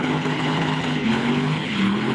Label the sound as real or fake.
fake